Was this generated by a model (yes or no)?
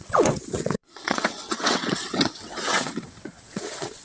yes